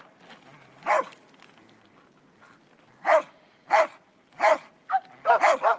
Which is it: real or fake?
real